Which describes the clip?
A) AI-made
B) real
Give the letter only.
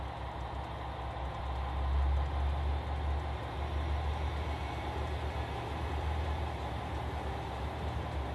B